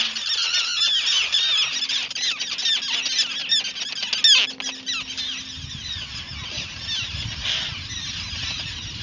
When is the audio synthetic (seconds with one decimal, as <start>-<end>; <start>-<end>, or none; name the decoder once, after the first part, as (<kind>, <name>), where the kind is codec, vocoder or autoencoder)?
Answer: none